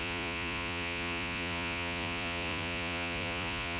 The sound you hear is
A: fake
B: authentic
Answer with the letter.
A